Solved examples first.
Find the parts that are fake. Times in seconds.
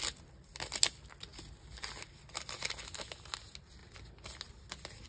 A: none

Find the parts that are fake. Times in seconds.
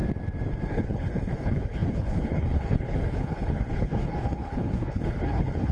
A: 0.7-5.7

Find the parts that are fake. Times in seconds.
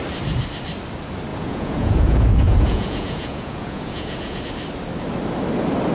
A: 1.3-4.4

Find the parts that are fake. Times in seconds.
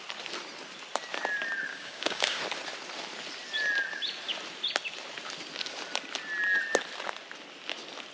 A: 1.7-2.4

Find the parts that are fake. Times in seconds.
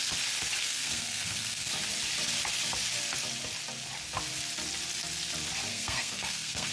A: 0.6-1.7; 5.7-6.7